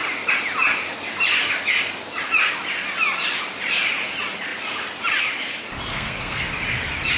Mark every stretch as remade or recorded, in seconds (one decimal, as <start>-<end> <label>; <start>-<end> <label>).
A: 0.0-5.9 recorded; 5.9-6.4 remade; 6.4-7.2 recorded